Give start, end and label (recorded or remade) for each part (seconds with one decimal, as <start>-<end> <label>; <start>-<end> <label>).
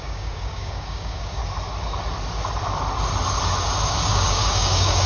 0.0-1.4 remade; 1.4-3.9 recorded; 3.9-5.1 remade